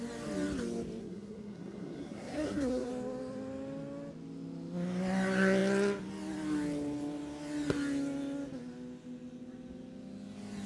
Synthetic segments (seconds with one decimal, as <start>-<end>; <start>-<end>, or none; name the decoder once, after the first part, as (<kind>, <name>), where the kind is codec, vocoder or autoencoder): 1.0-2.9 (codec, SNAC)